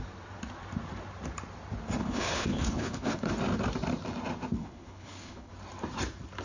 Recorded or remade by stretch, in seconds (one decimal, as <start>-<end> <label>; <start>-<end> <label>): 0.0-2.0 recorded; 2.0-3.3 remade; 3.3-4.6 recorded; 4.6-5.5 remade; 5.5-6.4 recorded